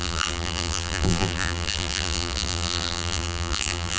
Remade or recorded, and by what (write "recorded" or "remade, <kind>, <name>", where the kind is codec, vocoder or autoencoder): remade, vocoder, BigVGAN v2